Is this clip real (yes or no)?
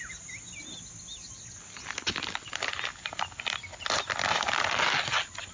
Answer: yes